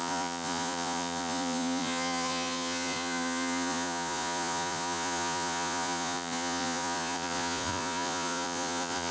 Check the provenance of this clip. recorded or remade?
remade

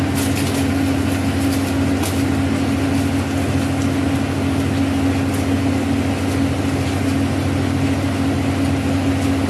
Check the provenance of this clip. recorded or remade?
recorded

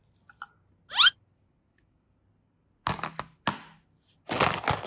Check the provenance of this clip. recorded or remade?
recorded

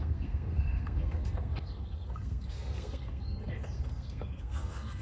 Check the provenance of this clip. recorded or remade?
remade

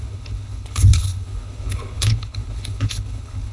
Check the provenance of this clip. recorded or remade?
remade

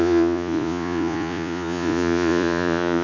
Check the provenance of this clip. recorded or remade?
remade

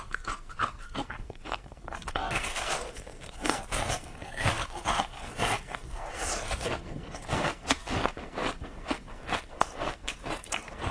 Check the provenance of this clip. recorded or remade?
remade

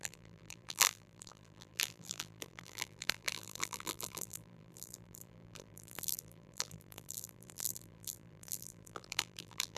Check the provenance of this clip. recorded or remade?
remade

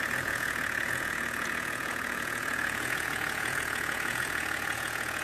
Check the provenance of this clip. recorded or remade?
remade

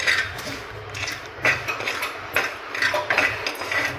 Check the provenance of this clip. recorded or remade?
remade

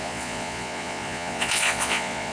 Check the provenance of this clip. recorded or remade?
remade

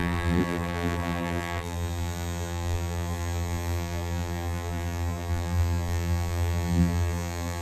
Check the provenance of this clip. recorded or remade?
remade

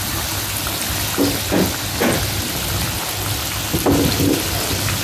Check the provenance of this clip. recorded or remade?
recorded